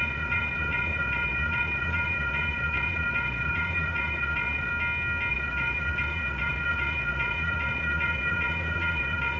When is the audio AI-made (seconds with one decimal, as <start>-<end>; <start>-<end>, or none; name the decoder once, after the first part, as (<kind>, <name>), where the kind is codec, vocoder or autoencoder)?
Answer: 0.0-4.7 (vocoder, Vocos); 5.3-9.4